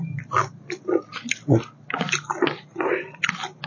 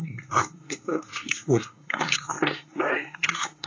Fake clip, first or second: second